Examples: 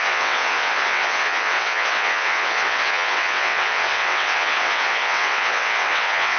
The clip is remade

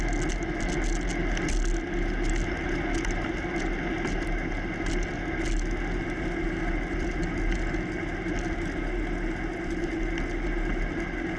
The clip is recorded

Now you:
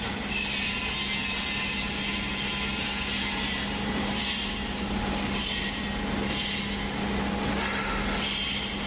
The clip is recorded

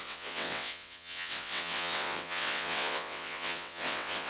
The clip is remade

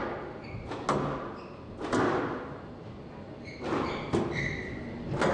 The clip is recorded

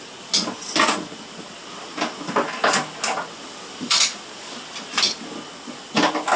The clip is recorded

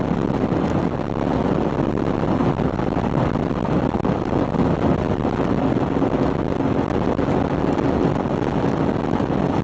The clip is recorded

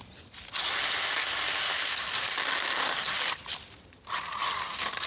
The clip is recorded